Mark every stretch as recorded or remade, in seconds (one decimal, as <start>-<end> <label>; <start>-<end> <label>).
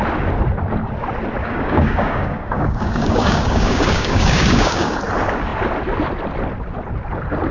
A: 0.0-1.4 recorded; 1.4-5.0 remade; 5.0-7.5 recorded